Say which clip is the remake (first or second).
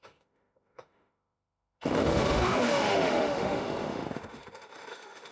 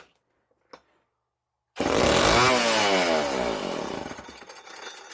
first